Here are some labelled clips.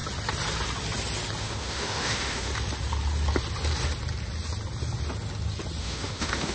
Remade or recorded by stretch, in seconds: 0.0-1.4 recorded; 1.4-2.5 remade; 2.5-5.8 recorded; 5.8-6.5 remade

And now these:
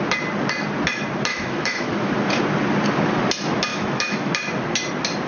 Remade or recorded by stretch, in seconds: 0.0-1.3 recorded; 1.3-2.1 remade; 2.1-3.7 recorded; 3.7-4.3 remade; 4.3-5.3 recorded

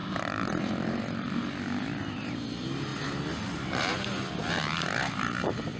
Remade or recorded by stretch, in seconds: 0.0-1.4 remade; 1.4-2.0 recorded; 2.0-5.8 remade

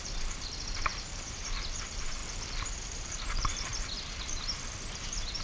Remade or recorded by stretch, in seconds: 0.0-2.2 remade; 2.2-2.7 recorded; 2.7-5.4 remade

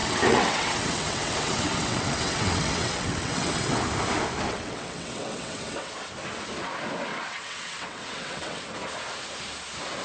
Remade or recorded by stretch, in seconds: 0.0-3.8 remade; 3.8-4.5 recorded; 4.5-5.9 remade; 5.9-7.1 recorded; 7.1-8.6 remade; 8.6-10.0 recorded

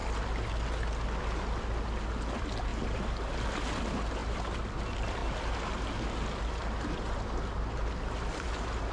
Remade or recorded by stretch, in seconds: 0.0-8.9 recorded